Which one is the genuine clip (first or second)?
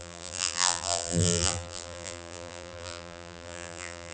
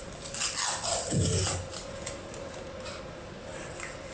second